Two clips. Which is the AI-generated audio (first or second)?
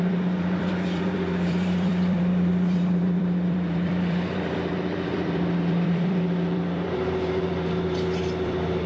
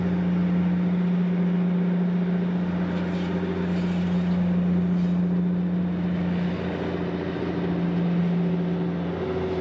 first